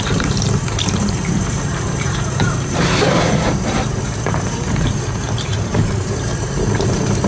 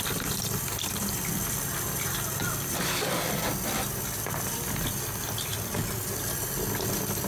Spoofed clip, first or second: first